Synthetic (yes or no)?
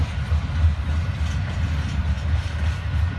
no